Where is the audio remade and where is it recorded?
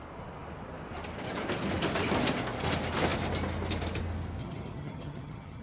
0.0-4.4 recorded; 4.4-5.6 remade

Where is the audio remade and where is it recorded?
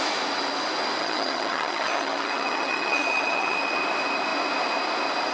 0.0-1.0 recorded; 1.0-3.8 remade; 3.8-5.3 recorded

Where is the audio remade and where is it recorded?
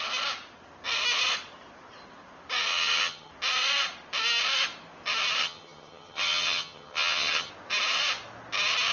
0.0-2.7 recorded; 2.7-3.3 remade; 3.3-5.4 recorded; 5.4-7.5 remade; 7.5-8.9 recorded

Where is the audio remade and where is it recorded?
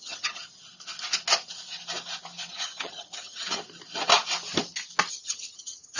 0.0-0.4 remade; 0.4-2.5 recorded; 2.5-3.6 remade; 3.6-5.1 recorded; 5.1-6.0 remade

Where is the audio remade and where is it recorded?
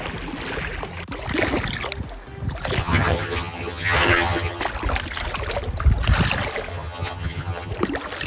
0.0-2.8 recorded; 2.8-4.6 remade; 4.6-6.7 recorded; 6.7-7.7 remade; 7.7-8.3 recorded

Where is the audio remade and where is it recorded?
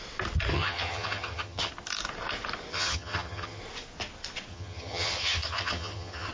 0.0-0.5 recorded; 0.5-1.7 remade; 1.7-2.7 recorded; 2.7-3.6 remade; 3.6-4.5 recorded; 4.5-6.3 remade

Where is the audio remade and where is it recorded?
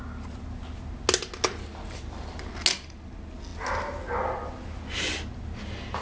0.0-6.0 recorded